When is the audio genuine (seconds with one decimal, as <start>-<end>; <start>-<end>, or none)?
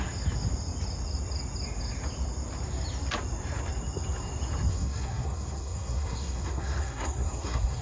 0.0-4.7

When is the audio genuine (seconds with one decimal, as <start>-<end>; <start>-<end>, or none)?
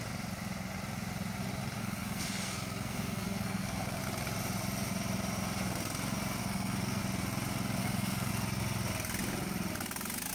0.0-1.8; 4.0-6.4; 7.0-7.8; 8.3-10.3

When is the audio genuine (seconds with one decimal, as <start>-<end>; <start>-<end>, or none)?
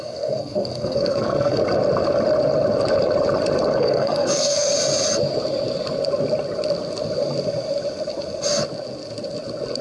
1.6-3.8; 4.7-9.8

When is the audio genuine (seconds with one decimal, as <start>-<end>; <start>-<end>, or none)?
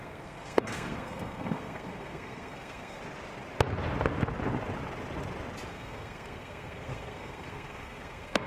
3.0-5.7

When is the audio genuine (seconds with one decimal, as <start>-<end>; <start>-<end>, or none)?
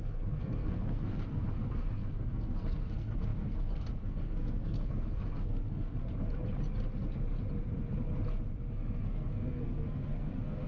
6.1-8.7